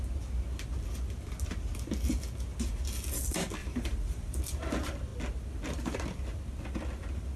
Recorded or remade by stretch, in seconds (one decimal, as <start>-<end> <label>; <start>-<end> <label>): 0.0-3.6 recorded; 3.6-4.4 remade; 4.4-7.4 recorded